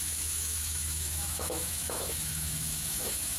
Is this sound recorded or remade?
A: remade